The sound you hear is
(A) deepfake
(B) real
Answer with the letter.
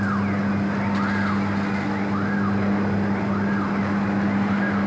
B